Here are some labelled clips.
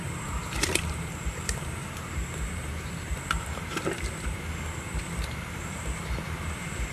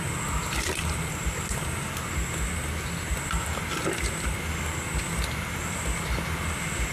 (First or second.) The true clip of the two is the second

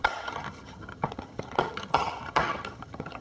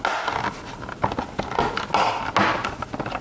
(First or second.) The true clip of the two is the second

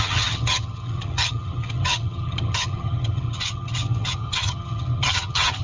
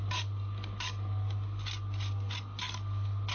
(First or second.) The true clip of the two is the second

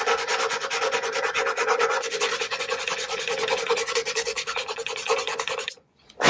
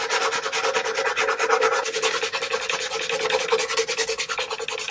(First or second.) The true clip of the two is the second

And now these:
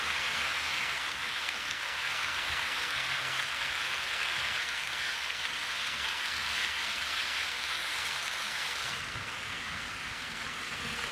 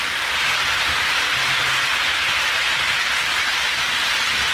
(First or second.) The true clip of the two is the second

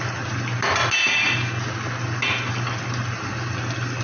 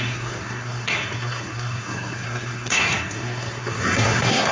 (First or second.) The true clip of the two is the first